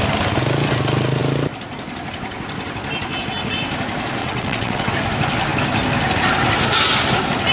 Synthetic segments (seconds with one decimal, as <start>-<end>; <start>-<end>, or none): 4.2-4.9

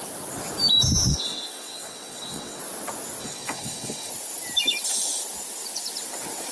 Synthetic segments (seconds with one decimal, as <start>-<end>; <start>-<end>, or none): 1.1-2.6; 3.2-4.1

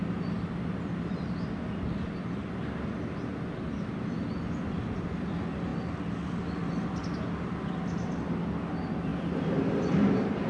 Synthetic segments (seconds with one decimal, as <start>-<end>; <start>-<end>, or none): none